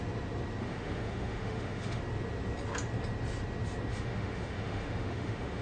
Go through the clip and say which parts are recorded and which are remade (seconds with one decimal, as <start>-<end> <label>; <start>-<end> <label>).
0.0-0.6 recorded; 0.6-2.0 remade; 2.0-3.9 recorded; 3.9-5.6 remade